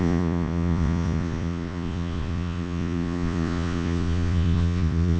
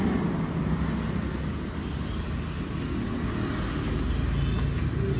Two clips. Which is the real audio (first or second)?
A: second